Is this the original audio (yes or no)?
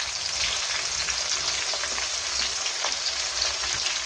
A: yes